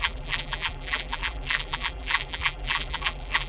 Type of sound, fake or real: fake